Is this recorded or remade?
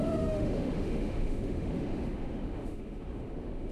remade